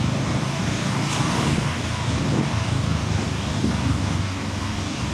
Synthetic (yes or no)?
yes